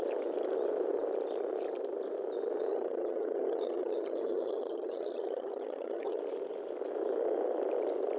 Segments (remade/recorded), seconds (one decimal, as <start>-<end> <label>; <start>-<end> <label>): 0.0-2.7 recorded; 2.7-6.2 remade; 6.2-8.2 recorded